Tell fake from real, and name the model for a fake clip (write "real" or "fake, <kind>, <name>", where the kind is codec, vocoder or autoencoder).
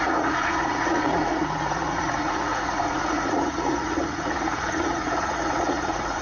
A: fake, vocoder, Vocos